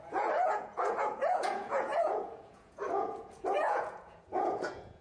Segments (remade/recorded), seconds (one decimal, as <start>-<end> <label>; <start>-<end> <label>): 0.0-5.0 remade